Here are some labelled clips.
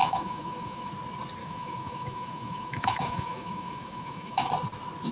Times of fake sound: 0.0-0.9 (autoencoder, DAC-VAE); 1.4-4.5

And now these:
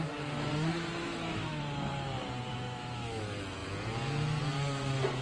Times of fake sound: 1.0-1.6 (autoencoder, DAC-VAE); 2.5-3.2

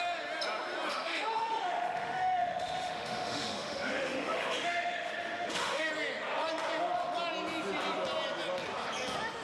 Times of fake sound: 0.9-5.9 (autoencoder, DAC-VAE)

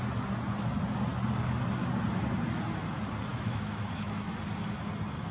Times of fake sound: 3.3-4.3 (autoencoder, DAC-VAE)

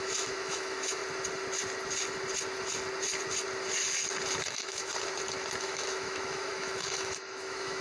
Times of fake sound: 0.0-1.0 (autoencoder, DAC-VAE); 4.5-4.9; 5.6-7.8

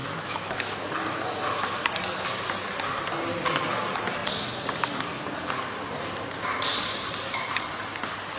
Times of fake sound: 0.0-0.9 (autoencoder, DAC-VAE)

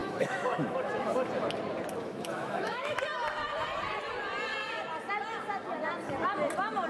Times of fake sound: 0.0-1.3 (autoencoder, DAC-VAE); 2.0-3.0